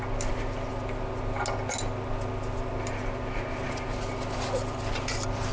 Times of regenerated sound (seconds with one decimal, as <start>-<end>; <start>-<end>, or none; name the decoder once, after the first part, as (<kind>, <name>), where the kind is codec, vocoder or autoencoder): none